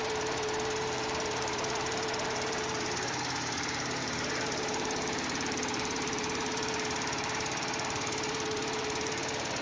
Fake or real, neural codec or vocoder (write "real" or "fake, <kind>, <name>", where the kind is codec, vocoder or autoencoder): fake, vocoder, BigVGAN v2